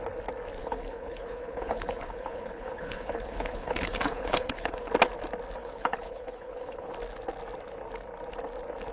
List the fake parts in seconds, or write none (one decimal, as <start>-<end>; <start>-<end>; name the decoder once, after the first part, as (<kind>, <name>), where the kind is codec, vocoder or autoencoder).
0.6-4.9 (codec, HILCodec); 5.6-6.9